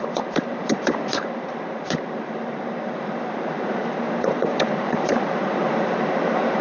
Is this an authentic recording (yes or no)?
no